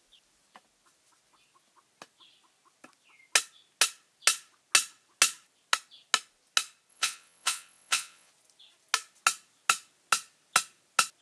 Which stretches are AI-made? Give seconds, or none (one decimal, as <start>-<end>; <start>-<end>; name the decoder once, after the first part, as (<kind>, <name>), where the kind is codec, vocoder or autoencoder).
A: 6.9-8.3 (vocoder, WaveNeXt)